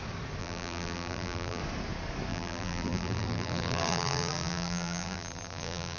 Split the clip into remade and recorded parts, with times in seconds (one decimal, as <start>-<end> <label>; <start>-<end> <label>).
0.0-0.4 recorded; 0.4-1.6 remade; 1.6-2.3 recorded; 2.3-6.0 remade